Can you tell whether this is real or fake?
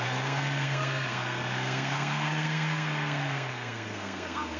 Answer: fake